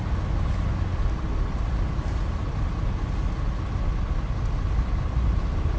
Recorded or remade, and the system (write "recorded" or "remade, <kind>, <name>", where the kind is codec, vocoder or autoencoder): recorded